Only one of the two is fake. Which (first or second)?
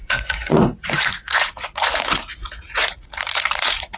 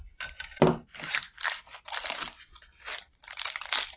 first